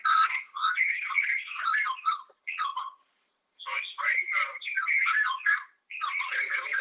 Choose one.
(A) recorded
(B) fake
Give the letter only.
B